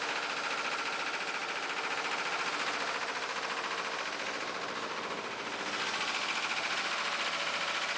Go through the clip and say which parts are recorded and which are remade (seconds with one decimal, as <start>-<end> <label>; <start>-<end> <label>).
0.0-8.0 recorded